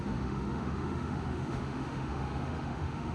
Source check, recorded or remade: remade